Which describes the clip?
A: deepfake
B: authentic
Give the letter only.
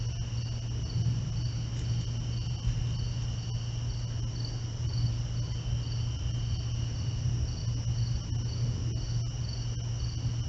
B